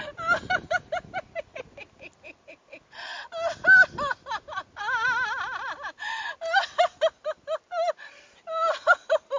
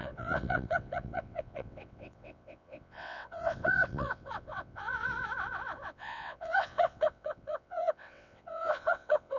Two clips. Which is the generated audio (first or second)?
second